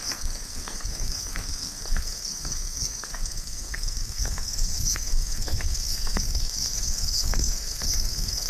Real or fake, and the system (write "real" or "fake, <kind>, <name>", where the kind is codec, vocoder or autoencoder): fake, codec, SNAC